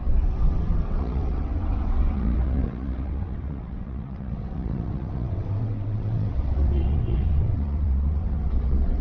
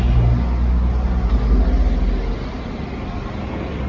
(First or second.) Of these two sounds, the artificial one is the first